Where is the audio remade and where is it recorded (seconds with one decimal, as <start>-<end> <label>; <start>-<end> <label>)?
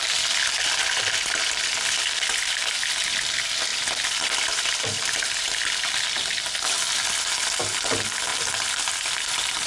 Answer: 0.0-3.7 recorded; 3.7-5.4 remade; 5.4-8.3 recorded; 8.3-9.7 remade